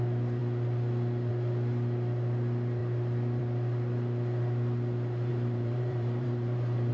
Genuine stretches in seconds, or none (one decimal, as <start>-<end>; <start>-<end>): 0.0-5.3